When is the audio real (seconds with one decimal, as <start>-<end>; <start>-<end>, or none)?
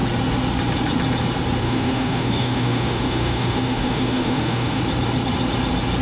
0.0-1.6; 4.8-6.0